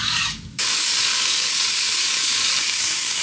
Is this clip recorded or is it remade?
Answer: remade